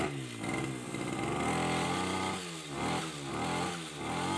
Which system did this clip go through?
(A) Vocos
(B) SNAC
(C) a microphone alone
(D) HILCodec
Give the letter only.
C